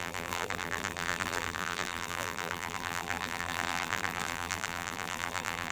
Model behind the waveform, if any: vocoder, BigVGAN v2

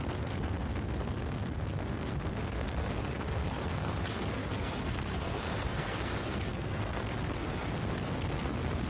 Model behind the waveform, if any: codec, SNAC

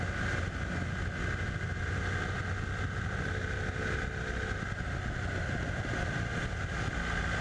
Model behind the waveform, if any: none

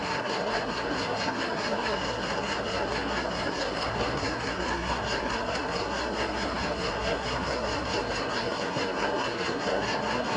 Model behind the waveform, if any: codec, SNAC